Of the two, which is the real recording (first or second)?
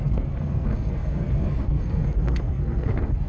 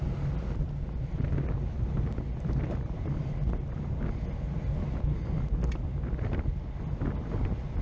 second